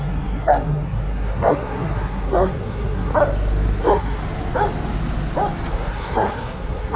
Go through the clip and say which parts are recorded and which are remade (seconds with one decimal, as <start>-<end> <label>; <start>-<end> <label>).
0.0-3.1 remade; 3.1-3.8 recorded; 3.8-4.2 remade; 4.2-5.7 recorded; 5.7-7.0 remade